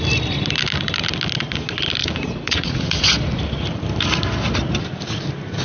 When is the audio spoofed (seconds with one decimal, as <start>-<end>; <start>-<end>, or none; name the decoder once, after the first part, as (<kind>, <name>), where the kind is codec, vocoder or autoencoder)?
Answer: 2.0-3.4 (vocoder, Vocos)